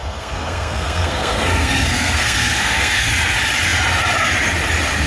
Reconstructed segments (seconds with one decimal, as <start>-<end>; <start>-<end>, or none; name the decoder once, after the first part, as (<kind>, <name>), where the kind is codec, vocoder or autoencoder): 0.0-3.1 (codec, SNAC)